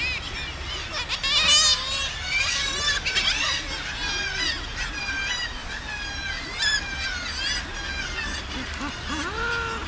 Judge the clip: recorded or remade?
recorded